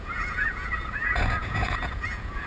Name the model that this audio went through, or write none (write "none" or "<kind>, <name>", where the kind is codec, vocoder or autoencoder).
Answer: vocoder, Vocos